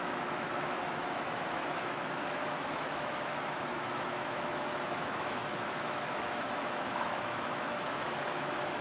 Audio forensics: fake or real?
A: fake